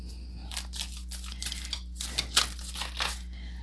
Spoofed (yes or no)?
no